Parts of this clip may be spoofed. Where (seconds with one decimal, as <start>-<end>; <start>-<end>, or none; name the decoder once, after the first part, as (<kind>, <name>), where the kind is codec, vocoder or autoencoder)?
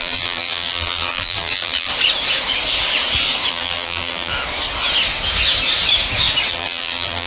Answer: 0.0-1.9 (vocoder, BigVGAN v2); 3.5-4.3; 6.5-7.3